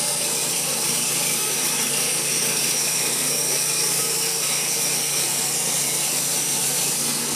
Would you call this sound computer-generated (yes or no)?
yes